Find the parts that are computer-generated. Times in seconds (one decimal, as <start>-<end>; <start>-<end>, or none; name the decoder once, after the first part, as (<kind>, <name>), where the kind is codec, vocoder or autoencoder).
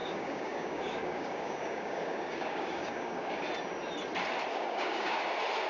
0.0-3.4 (codec, DAC); 4.5-5.2